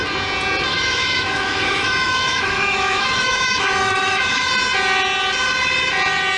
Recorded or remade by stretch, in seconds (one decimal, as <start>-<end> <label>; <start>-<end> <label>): 0.0-0.7 recorded; 0.7-4.5 remade; 4.5-6.4 recorded